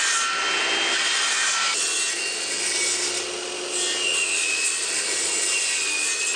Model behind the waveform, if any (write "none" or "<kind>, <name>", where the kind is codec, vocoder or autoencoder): none